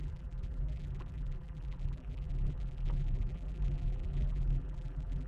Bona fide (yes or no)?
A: no